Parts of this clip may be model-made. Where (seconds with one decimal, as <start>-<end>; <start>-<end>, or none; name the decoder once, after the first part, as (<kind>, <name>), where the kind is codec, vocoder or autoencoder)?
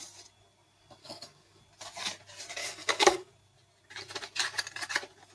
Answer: 1.0-1.6 (codec, DAC); 2.6-3.3